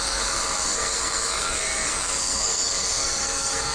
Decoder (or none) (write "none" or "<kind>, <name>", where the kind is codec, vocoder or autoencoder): codec, SNAC